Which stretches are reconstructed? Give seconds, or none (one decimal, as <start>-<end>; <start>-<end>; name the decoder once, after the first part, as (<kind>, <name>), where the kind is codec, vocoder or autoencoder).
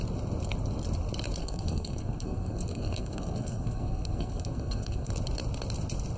1.4-5.1 (codec, SNAC)